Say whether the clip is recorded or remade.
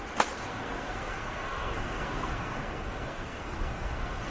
remade